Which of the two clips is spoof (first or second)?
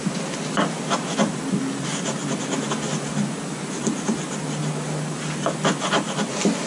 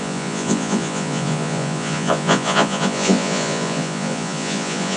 second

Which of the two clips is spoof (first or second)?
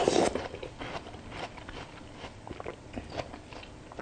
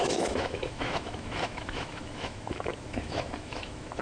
second